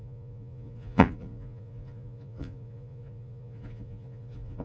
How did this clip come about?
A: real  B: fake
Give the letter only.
B